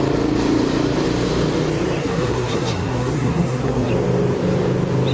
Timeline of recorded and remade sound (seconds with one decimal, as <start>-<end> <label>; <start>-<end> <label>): 0.0-2.0 recorded; 2.0-3.9 remade; 3.9-5.1 recorded